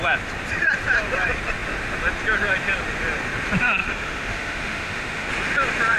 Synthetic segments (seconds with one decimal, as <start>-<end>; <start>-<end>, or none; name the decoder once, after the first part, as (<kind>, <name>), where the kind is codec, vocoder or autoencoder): 3.8-5.3 (autoencoder, DAC-VAE)